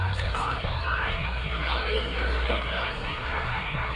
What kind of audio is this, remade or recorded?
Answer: remade